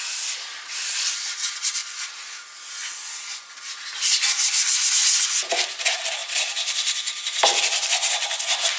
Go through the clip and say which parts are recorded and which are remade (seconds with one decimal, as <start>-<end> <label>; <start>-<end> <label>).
0.0-8.8 recorded

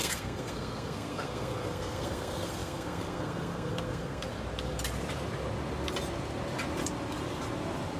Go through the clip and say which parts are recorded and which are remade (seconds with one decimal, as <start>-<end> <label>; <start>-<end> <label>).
0.0-4.3 remade; 4.3-8.0 recorded

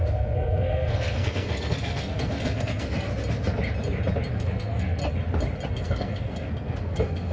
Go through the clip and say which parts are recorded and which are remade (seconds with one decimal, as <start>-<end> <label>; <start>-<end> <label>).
0.0-3.1 remade; 3.1-4.3 recorded; 4.3-5.0 remade; 5.0-5.7 recorded; 5.7-7.3 remade

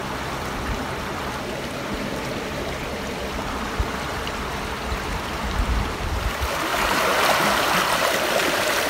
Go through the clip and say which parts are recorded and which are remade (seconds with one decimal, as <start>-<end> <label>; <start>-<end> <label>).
0.0-8.9 remade

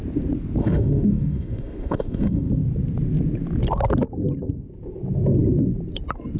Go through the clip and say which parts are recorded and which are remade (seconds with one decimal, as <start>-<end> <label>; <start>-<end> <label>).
0.0-0.6 recorded; 0.6-2.5 remade; 2.5-6.4 recorded

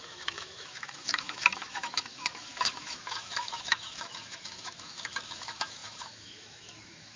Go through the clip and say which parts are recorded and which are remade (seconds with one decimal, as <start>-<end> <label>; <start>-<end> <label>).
0.0-7.2 remade